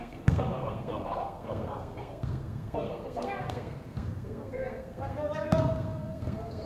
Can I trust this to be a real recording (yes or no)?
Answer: no